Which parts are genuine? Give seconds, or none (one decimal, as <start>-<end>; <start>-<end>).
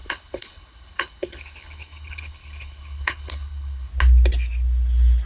3.9-5.3